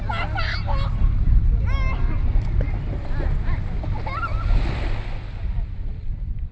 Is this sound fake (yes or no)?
no